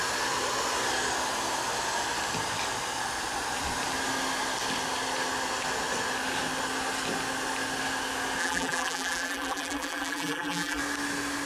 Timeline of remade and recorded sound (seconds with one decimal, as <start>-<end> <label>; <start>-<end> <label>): 0.0-8.4 recorded; 8.4-10.8 remade; 10.8-11.5 recorded

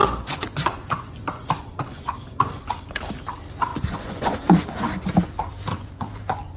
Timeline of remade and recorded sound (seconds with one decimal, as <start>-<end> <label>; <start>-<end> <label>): 0.0-2.9 remade; 2.9-3.7 recorded; 3.7-4.9 remade; 4.9-5.7 recorded; 5.7-6.6 remade